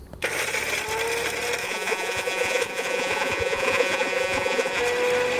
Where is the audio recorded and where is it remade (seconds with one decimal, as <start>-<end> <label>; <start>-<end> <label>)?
0.0-1.6 recorded; 1.6-4.8 remade; 4.8-5.4 recorded